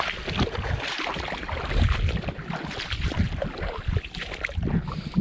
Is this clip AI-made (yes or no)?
no